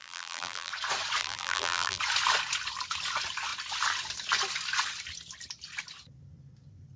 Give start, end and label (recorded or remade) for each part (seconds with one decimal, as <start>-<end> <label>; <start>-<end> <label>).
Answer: 0.0-0.7 remade; 0.7-1.2 recorded; 1.2-2.0 remade; 2.0-7.0 recorded